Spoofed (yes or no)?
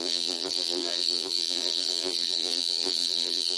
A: yes